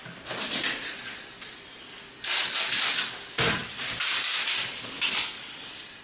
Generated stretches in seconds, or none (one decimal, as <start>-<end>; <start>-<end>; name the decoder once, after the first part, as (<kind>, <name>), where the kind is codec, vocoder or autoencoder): 0.6-1.5 (vocoder, BigVGAN v2); 3.6-6.0